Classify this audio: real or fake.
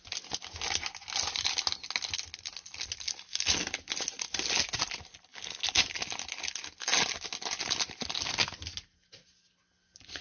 real